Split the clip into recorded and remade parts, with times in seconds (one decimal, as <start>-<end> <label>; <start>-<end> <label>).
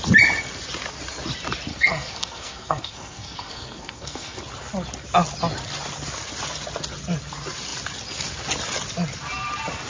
0.0-1.7 recorded; 1.7-4.4 remade; 4.4-9.9 recorded